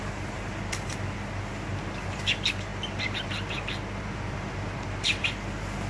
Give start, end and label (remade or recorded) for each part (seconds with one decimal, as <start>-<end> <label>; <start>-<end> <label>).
0.0-5.9 recorded